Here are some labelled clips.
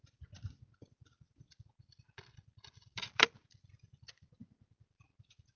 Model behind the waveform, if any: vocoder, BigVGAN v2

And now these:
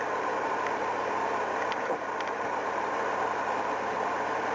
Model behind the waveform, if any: vocoder, BigVGAN v2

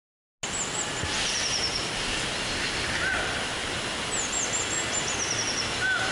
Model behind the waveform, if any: none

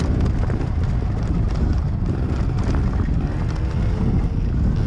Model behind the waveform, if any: none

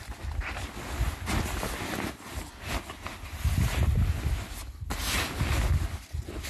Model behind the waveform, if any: none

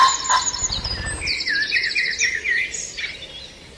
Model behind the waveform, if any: none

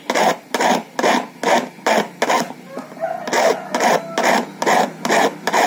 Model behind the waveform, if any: none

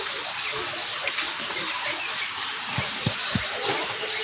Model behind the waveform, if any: none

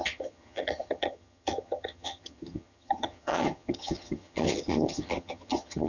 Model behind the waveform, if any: vocoder, HiFi-GAN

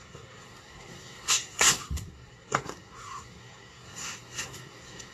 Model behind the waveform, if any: codec, SNAC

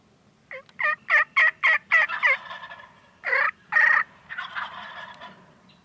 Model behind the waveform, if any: none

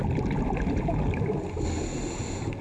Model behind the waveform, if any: none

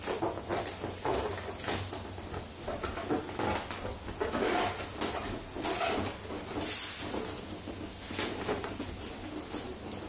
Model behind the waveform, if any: none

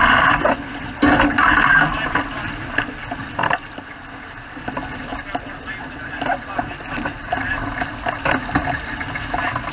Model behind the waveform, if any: none